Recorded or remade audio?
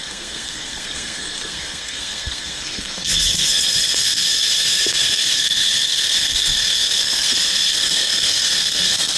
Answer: remade